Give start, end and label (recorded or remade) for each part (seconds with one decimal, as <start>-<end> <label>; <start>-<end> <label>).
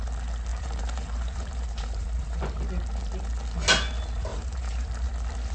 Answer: 0.0-0.5 recorded; 0.5-2.4 remade; 2.4-4.3 recorded; 4.3-5.1 remade; 5.1-5.5 recorded